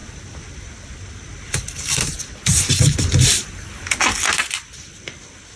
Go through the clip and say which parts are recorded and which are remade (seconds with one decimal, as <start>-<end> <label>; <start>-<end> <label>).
0.0-3.0 remade; 3.0-5.6 recorded

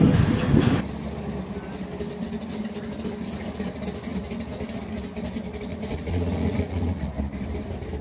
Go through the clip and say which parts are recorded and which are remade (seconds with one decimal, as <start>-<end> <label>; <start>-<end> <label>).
0.0-5.7 recorded; 5.7-7.1 remade; 7.1-8.0 recorded